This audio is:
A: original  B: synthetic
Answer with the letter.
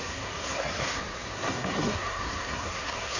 B